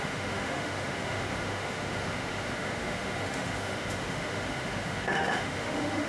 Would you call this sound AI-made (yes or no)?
yes